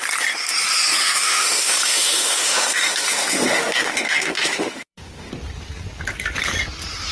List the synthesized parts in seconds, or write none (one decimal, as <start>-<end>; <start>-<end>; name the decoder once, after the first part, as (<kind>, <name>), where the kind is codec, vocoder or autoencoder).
1.0-5.3 (autoencoder, DAC-VAE)